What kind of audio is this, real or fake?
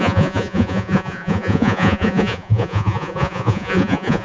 fake